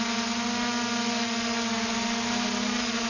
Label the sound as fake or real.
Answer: real